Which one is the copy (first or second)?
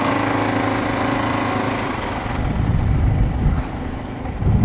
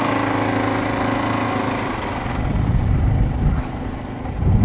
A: first